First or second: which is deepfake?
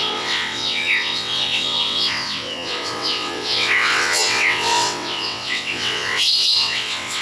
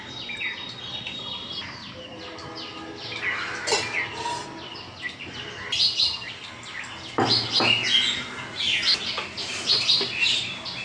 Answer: first